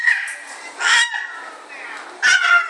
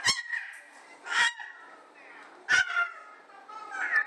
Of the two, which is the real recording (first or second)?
first